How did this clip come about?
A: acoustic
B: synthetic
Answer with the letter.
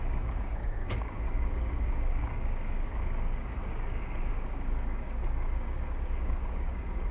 B